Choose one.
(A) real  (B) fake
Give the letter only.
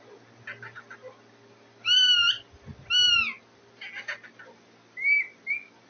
A